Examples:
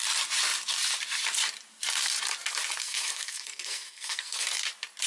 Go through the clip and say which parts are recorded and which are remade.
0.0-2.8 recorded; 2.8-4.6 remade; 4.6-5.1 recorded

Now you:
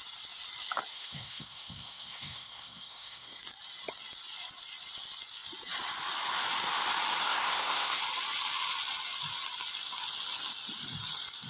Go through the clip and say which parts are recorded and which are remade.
0.0-0.9 recorded; 0.9-3.4 remade; 3.4-7.2 recorded; 7.2-8.0 remade; 8.0-11.5 recorded

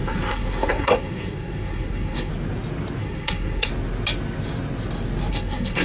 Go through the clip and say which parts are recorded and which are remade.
0.0-2.3 remade; 2.3-3.0 recorded; 3.0-3.7 remade; 3.7-5.3 recorded; 5.3-5.8 remade